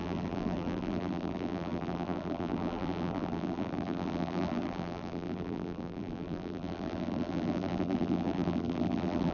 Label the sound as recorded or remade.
remade